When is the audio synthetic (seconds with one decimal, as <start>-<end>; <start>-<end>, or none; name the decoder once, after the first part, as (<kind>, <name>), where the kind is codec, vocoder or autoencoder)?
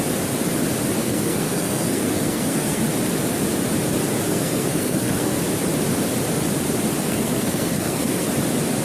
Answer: 1.0-2.8 (codec, SNAC); 4.3-5.4; 7.0-8.3